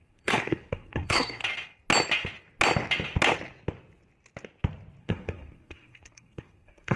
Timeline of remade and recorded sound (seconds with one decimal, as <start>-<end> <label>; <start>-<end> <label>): 0.0-1.4 remade; 1.4-5.0 recorded; 5.0-7.0 remade